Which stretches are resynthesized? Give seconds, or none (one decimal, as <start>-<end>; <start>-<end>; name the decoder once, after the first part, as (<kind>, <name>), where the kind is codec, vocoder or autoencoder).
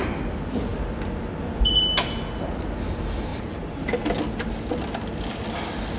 none